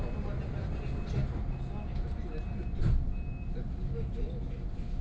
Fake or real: real